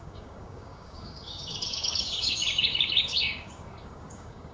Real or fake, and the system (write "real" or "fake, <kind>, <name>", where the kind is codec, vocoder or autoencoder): fake, codec, DAC